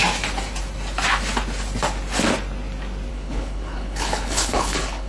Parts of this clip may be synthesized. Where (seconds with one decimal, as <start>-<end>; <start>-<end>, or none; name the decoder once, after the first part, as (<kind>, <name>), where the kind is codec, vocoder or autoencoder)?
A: 3.1-5.1 (codec, HILCodec)